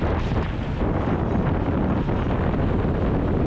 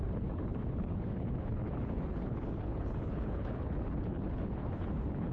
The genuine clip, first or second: first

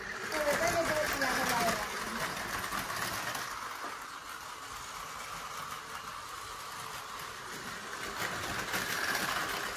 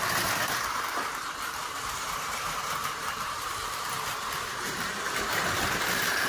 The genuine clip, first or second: first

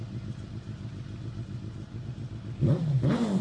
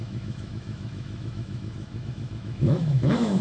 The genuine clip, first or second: first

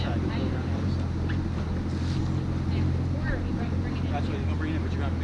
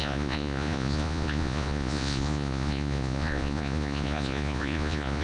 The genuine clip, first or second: first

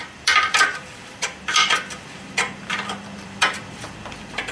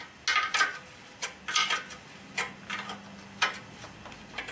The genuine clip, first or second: second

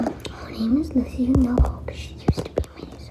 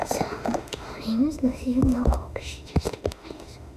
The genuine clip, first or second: first